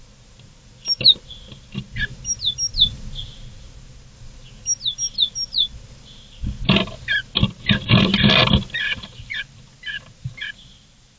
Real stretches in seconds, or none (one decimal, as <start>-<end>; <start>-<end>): 0.0-11.2